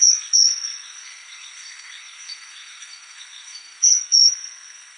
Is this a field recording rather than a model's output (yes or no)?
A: no